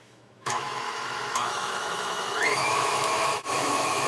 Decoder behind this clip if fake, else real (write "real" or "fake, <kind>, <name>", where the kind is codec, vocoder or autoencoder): fake, autoencoder, DAC-VAE